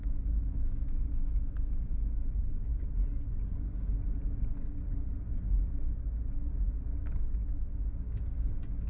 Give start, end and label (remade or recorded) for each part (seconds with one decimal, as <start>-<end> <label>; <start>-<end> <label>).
0.0-2.7 remade; 2.7-7.0 recorded; 7.0-7.4 remade; 7.4-8.3 recorded; 8.3-8.9 remade